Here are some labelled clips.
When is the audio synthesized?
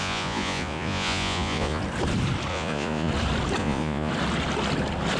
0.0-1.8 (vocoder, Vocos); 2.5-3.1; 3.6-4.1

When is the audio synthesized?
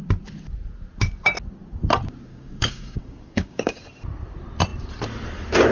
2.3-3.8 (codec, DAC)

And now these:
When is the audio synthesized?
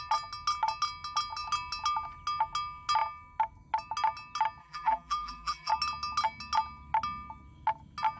4.6-5.7 (vocoder, BigVGAN v2)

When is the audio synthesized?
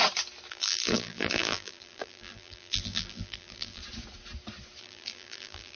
0.5-3.8 (vocoder, BigVGAN v2); 4.8-5.8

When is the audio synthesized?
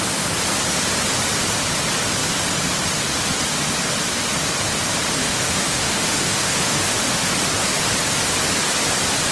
5.2-7.3 (autoencoder, DAC-VAE)